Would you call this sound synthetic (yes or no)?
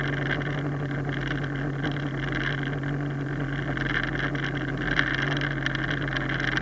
no